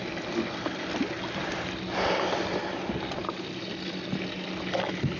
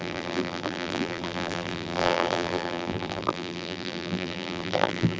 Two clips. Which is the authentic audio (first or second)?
first